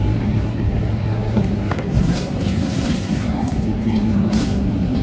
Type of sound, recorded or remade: remade